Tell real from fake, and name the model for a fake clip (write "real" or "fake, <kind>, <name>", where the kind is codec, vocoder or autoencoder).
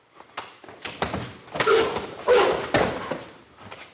real